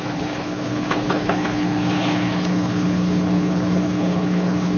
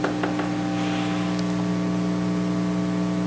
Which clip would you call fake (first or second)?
first